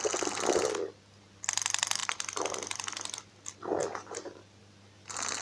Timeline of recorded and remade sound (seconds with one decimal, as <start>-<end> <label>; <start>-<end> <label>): 0.0-5.4 recorded